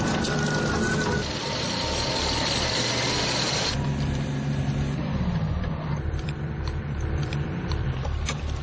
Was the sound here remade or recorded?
remade